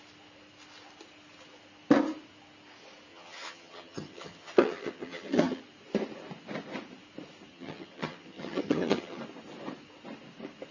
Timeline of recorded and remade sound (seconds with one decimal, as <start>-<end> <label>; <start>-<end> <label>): 0.0-3.1 recorded; 3.1-5.6 remade; 5.6-7.5 recorded; 7.5-9.2 remade; 9.2-10.7 recorded